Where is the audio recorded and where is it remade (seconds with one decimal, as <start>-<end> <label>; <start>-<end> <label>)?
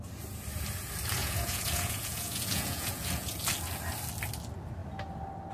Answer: 0.0-1.2 recorded; 1.2-3.4 remade; 3.4-5.5 recorded